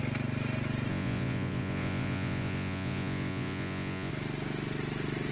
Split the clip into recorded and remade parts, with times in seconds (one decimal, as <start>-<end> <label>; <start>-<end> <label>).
0.0-0.9 recorded; 0.9-4.1 remade; 4.1-5.3 recorded